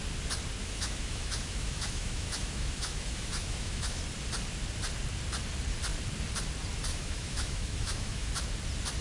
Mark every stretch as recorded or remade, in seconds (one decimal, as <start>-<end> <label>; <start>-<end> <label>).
0.0-0.6 recorded; 0.6-4.0 remade; 4.0-6.9 recorded; 6.9-8.3 remade; 8.3-9.0 recorded